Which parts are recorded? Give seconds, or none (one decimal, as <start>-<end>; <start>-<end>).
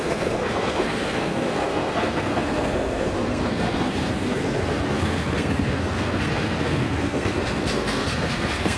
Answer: none